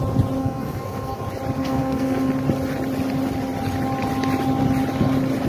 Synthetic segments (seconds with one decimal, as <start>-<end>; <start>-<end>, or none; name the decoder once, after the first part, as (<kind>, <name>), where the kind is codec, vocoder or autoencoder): 0.4-1.2 (codec, SNAC); 1.6-2.3